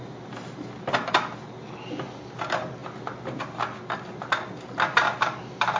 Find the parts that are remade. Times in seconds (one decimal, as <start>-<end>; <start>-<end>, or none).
none